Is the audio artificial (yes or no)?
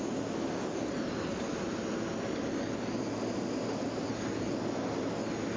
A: no